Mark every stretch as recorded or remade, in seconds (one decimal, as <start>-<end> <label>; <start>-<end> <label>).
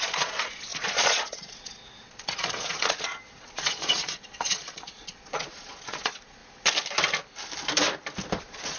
0.0-6.4 remade; 6.4-8.4 recorded; 8.4-8.8 remade